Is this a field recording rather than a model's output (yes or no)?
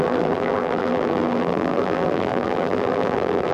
no